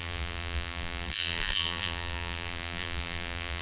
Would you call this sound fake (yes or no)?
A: yes